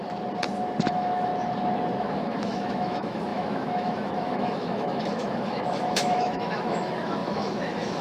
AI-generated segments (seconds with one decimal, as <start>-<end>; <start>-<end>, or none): 0.8-1.3; 2.0-8.0